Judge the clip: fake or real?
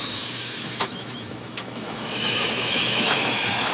fake